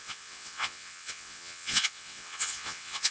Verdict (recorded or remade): remade